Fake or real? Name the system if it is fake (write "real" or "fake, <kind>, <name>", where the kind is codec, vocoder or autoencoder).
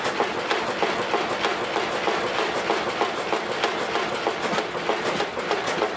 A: real